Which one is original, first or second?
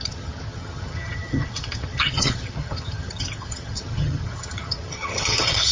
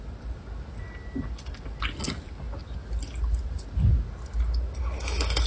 second